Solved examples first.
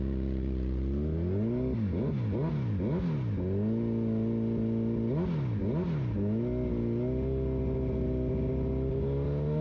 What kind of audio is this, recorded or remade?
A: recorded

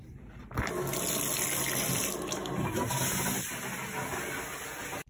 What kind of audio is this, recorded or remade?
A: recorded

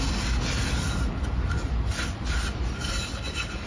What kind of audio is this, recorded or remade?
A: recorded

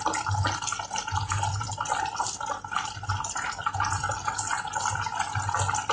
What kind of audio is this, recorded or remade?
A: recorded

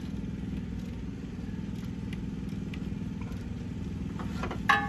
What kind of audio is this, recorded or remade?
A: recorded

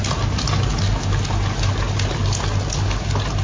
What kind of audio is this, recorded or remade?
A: recorded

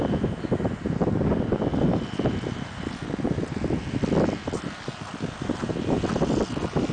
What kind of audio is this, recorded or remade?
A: recorded